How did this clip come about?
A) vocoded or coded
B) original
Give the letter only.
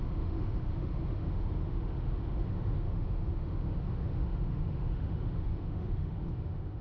A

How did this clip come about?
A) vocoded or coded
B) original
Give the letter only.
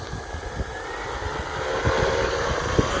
A